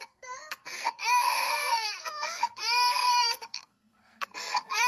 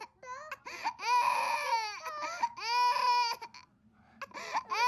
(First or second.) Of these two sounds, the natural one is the second